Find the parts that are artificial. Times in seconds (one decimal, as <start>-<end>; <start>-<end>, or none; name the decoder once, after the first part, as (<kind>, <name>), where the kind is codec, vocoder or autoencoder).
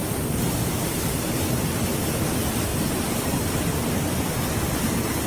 0.0-0.9 (vocoder, BigVGAN v2); 2.7-3.9